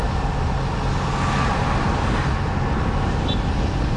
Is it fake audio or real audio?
real